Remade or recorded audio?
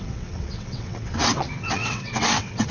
remade